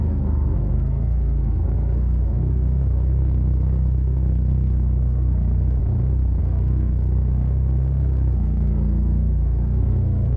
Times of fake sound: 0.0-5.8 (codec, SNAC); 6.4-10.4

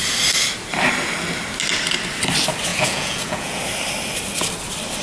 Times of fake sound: 2.7-3.6 (vocoder, Vocos)

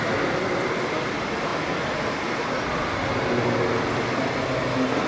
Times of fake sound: none

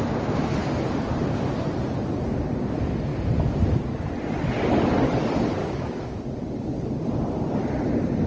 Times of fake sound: 5.6-6.2 (autoencoder, DAC-VAE)